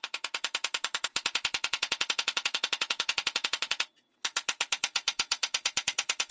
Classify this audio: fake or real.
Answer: fake